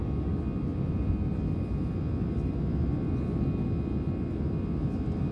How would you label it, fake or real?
real